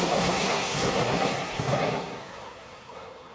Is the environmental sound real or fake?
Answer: fake